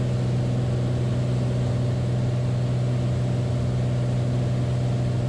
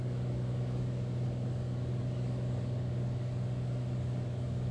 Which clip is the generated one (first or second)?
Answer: second